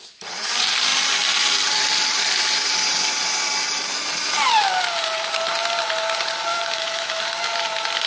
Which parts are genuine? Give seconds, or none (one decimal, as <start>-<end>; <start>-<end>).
0.0-6.5; 7.2-8.1